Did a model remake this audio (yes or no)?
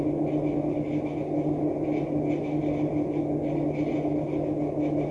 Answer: no